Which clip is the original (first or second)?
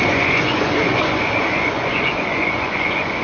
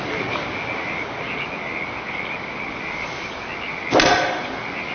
second